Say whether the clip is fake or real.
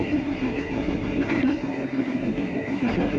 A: fake